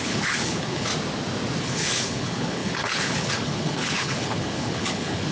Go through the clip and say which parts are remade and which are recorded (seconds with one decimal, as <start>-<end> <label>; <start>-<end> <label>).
0.0-0.9 remade; 0.9-1.6 recorded; 1.6-5.3 remade